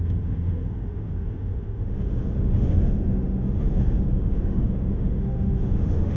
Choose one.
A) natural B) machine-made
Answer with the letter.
B